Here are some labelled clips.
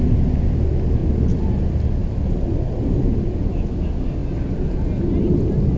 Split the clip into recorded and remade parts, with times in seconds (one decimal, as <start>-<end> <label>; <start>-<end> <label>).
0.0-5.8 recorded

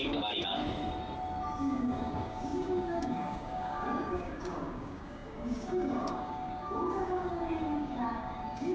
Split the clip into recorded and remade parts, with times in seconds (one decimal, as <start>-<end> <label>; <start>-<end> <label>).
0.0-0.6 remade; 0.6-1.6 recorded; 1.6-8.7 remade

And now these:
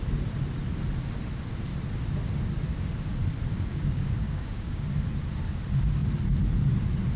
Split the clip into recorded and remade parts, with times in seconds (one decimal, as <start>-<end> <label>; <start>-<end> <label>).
0.0-3.5 recorded; 3.5-4.9 remade; 4.9-7.2 recorded